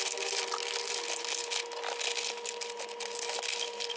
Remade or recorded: recorded